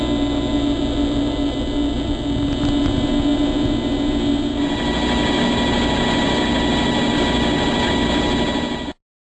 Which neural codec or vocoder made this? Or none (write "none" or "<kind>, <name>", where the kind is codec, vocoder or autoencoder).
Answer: none